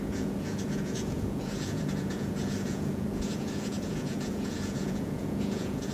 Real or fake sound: fake